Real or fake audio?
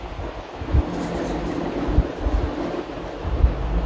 real